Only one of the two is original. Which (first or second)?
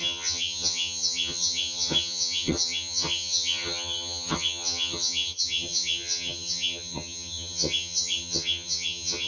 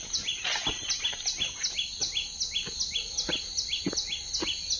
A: second